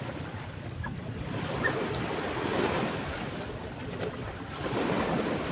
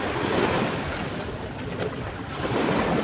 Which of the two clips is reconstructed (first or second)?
first